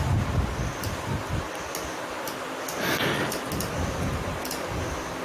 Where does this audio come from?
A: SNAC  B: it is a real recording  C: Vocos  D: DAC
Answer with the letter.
B